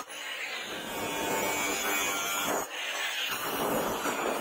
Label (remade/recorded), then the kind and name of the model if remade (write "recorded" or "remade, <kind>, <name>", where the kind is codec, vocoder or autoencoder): recorded